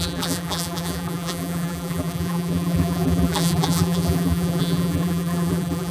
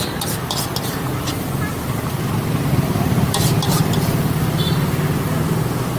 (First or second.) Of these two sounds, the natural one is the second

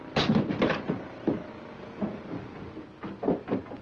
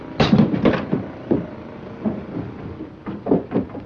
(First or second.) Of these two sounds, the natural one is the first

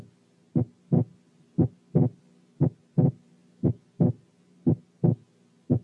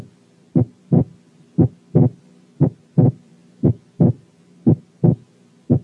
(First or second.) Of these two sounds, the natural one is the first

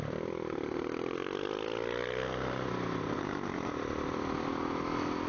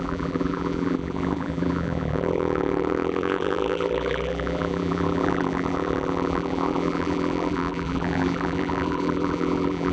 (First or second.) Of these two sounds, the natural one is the first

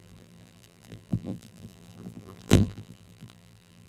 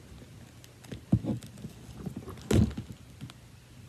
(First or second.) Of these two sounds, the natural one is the second